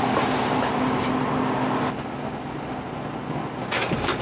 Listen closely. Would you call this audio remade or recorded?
recorded